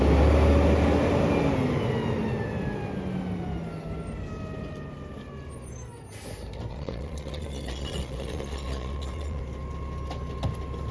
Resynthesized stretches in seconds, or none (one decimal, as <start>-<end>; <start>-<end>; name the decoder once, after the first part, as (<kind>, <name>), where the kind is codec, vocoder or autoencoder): 6.7-9.4 (vocoder, Vocos)